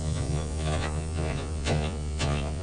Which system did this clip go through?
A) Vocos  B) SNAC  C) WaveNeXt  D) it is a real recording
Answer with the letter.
A